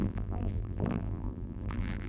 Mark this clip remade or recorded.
remade